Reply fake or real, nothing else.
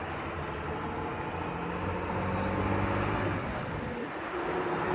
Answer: real